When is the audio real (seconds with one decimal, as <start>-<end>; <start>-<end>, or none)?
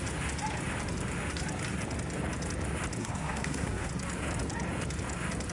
0.0-3.0; 3.9-5.5